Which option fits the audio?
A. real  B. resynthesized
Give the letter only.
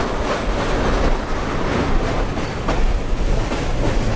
A